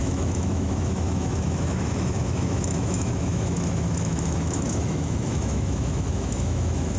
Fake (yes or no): yes